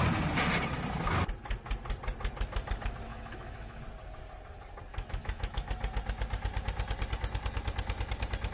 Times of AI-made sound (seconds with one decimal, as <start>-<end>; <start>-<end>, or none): 3.1-3.8; 4.9-5.7